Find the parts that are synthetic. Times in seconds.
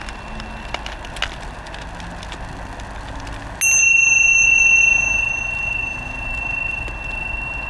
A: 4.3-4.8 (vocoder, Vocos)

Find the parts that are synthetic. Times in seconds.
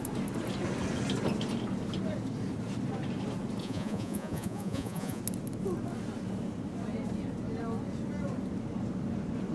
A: 3.6-5.2 (vocoder, Vocos)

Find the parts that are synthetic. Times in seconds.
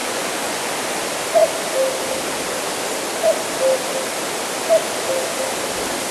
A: 0.0-0.7 (vocoder, Vocos)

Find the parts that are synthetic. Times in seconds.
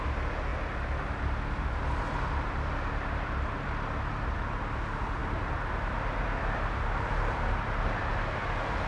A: none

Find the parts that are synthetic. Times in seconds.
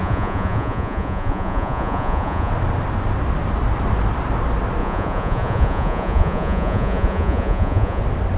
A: 0.0-2.5 (vocoder, Vocos); 4.8-8.0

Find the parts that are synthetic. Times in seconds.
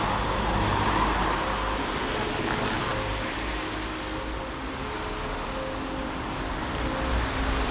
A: none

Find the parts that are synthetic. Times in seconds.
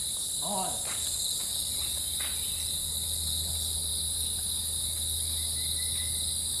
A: none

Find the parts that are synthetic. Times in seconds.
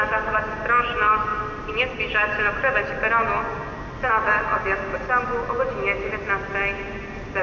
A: none